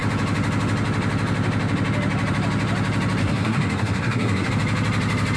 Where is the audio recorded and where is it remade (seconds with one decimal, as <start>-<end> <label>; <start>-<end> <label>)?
0.0-3.2 recorded; 3.2-4.5 remade; 4.5-5.4 recorded

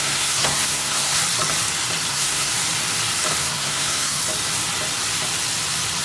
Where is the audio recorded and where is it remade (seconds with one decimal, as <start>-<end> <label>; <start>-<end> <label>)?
0.0-1.2 remade; 1.2-2.1 recorded; 2.1-2.5 remade; 2.5-3.4 recorded; 3.4-4.2 remade; 4.2-6.0 recorded

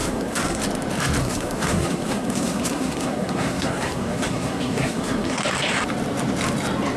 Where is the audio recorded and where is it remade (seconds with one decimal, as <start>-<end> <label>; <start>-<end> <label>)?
0.0-0.6 remade; 0.6-1.2 recorded; 1.2-5.4 remade; 5.4-7.0 recorded

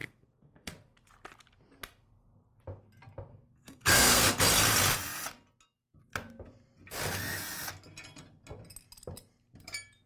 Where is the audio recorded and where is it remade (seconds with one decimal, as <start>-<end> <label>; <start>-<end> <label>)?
0.0-0.7 remade; 0.7-3.3 recorded; 3.3-4.2 remade; 4.2-10.1 recorded

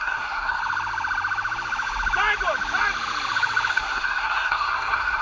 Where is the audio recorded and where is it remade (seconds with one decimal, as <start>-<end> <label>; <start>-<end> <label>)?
0.0-0.6 remade; 0.6-3.7 recorded; 3.7-5.2 remade

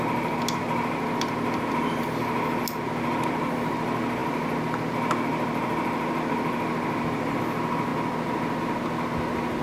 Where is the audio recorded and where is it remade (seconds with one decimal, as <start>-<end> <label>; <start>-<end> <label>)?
0.0-9.6 recorded

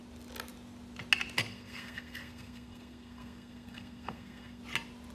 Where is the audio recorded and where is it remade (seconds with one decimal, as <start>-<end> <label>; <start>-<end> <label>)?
0.0-1.5 recorded; 1.5-4.6 remade; 4.6-5.1 recorded